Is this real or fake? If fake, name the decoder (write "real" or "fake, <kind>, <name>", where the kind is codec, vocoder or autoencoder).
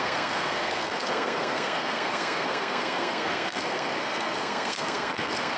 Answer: fake, codec, SNAC